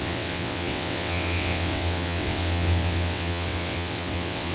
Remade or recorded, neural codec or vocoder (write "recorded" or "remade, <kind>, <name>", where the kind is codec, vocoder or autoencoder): remade, vocoder, WaveNeXt